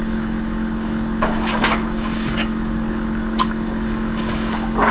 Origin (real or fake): fake